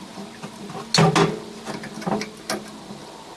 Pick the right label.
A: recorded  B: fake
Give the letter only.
A